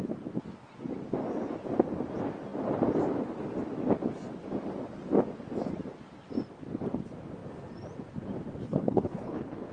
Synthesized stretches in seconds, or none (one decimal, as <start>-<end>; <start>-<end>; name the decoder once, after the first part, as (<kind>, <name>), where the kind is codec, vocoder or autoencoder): 8.6-9.7 (codec, HILCodec)